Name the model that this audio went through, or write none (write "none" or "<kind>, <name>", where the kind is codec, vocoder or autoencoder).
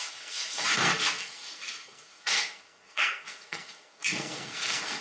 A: codec, SNAC